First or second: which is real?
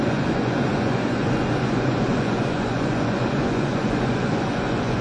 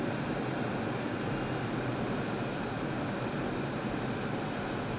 second